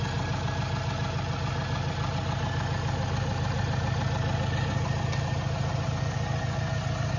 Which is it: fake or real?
real